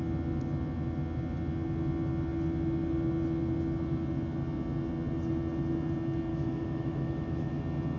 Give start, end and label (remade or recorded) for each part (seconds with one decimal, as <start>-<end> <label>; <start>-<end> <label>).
0.0-6.3 recorded; 6.3-7.6 remade; 7.6-8.0 recorded